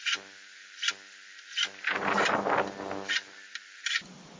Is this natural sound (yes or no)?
yes